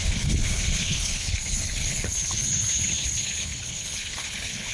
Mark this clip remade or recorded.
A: remade